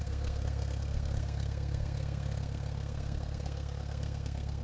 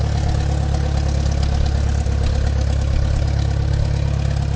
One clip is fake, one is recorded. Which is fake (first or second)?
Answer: first